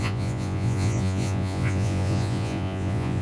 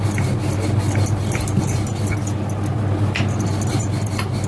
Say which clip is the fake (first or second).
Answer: first